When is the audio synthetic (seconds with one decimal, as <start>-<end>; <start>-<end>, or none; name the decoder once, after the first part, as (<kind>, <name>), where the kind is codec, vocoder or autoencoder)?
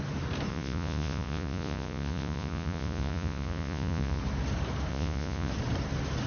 0.5-4.2 (vocoder, Vocos); 4.9-5.5